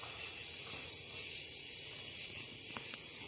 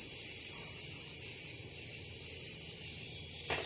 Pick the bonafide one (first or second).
second